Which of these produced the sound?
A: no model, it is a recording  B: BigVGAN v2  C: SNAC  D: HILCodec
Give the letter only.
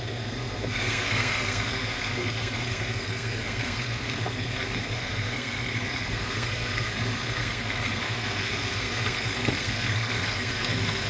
C